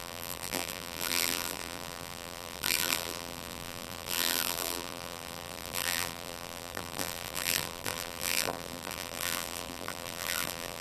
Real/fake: fake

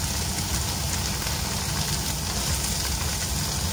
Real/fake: real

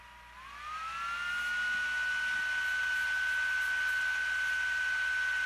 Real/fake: real